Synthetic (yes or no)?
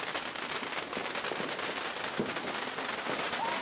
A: no